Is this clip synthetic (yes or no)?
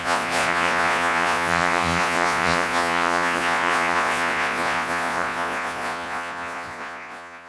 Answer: yes